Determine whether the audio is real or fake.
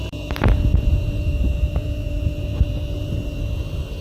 fake